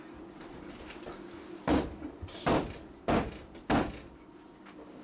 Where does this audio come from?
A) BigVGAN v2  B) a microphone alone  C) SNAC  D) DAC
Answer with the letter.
B